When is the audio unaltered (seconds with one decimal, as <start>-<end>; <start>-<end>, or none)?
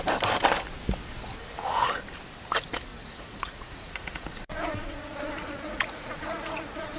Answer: 0.0-2.9